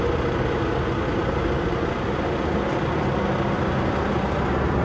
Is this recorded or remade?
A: recorded